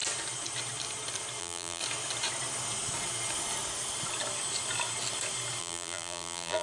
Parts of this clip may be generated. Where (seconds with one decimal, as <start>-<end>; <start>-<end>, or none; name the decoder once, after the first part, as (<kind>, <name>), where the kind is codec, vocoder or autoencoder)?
1.4-1.8 (vocoder, BigVGAN v2); 5.6-6.6

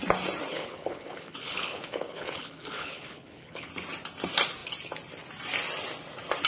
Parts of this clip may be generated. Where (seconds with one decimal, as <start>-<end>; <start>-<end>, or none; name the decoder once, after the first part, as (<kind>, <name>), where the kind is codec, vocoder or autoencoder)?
0.5-3.7 (codec, HILCodec)

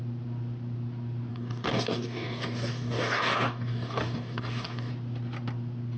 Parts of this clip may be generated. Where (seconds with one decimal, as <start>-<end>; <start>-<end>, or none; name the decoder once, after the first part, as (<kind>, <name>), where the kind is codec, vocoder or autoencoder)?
1.3-4.9 (codec, DAC)

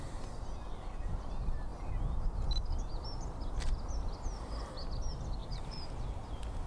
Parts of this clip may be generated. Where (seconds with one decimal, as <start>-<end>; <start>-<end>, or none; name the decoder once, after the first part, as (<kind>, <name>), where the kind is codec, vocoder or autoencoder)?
5.4-5.9 (vocoder, BigVGAN v2)